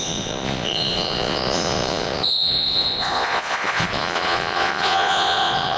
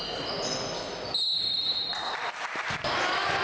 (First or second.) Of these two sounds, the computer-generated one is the first